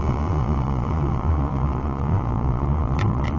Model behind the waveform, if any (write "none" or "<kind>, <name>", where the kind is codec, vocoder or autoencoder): vocoder, Vocos